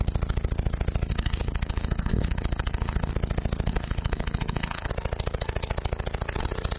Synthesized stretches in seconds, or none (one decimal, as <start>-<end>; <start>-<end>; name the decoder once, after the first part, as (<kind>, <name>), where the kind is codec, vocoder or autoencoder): 1.1-3.1 (codec, SNAC); 3.7-4.9